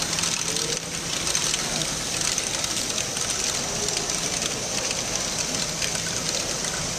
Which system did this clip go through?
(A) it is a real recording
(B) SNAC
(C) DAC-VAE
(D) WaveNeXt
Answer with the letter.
A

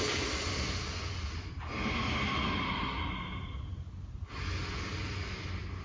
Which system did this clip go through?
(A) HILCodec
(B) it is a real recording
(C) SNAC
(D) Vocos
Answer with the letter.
B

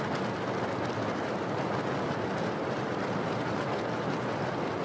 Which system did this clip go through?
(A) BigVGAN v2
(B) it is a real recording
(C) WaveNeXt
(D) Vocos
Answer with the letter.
A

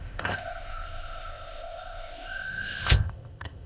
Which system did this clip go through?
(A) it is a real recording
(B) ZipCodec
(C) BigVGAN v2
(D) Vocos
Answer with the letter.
B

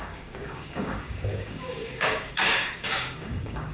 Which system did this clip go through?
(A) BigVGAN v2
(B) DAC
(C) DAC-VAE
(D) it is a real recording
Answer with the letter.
B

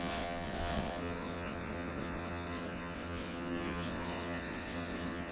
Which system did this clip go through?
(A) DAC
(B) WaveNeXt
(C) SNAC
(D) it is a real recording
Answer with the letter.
B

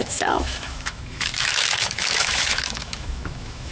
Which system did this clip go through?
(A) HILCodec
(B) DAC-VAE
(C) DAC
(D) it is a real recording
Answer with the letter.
B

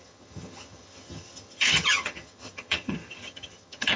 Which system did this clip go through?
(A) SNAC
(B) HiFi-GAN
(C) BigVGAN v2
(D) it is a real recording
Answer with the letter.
B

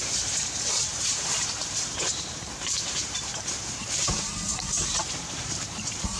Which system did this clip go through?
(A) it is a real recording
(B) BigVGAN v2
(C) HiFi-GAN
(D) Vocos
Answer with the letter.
B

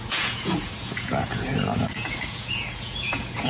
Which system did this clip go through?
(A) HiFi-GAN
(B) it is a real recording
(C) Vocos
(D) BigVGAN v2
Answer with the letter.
C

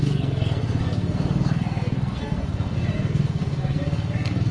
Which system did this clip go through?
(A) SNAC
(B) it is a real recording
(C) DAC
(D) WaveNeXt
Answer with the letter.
A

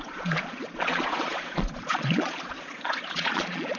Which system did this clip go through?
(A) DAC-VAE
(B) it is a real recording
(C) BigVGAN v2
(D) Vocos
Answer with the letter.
D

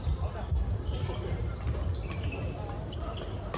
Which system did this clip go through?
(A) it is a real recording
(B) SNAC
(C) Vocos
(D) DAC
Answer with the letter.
A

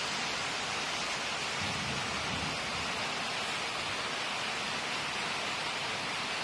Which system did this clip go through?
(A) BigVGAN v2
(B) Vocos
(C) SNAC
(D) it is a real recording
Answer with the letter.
D